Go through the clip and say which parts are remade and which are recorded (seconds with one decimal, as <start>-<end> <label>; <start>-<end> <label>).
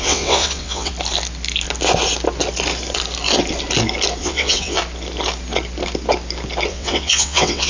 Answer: 0.0-0.9 remade; 0.9-4.2 recorded; 4.2-4.8 remade; 4.8-6.7 recorded; 6.7-7.7 remade